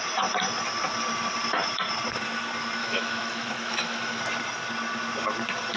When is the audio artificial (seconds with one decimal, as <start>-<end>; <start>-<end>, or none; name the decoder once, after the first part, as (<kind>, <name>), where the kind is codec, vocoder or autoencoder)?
2.8-4.2 (autoencoder, DAC-VAE)